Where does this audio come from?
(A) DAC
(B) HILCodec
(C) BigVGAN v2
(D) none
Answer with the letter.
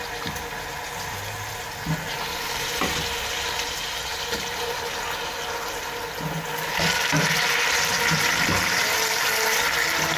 C